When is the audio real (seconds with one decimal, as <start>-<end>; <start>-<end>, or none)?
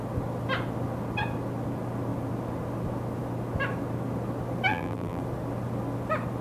0.0-4.7; 5.2-6.4